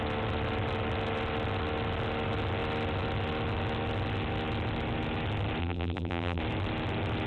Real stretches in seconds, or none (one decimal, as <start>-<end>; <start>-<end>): 0.0-5.6; 6.4-7.3